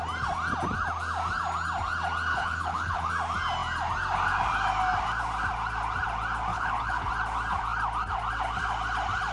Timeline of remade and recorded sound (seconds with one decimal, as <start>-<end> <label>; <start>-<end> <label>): 0.0-2.3 recorded; 2.3-3.1 remade; 3.1-6.5 recorded; 6.5-7.1 remade; 7.1-9.3 recorded